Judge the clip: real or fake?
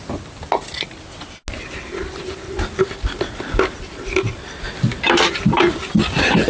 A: real